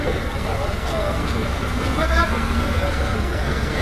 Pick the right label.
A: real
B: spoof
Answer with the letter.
B